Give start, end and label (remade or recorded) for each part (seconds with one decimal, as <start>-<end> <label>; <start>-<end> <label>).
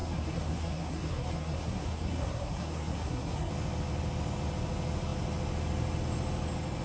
0.0-3.5 remade; 3.5-6.8 recorded